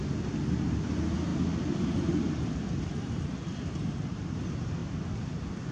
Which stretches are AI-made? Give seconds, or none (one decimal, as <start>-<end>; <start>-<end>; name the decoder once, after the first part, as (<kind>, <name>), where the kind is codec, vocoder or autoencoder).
none

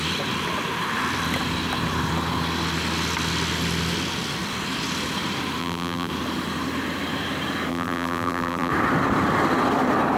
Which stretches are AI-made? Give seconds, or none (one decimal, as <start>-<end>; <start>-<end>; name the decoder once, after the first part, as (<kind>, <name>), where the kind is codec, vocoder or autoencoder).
5.6-6.1 (vocoder, BigVGAN v2); 7.7-8.7